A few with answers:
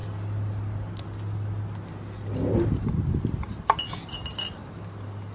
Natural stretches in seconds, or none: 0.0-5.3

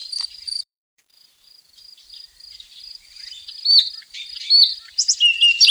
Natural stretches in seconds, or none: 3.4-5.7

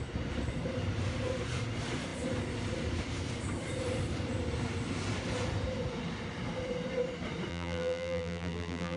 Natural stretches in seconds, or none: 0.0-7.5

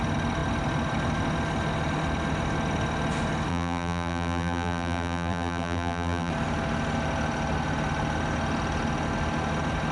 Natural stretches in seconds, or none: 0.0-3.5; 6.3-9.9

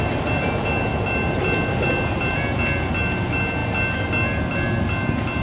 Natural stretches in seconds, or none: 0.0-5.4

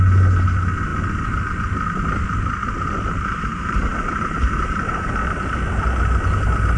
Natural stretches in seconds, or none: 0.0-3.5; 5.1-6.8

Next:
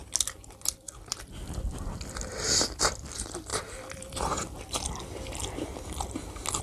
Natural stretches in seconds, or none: 0.0-6.6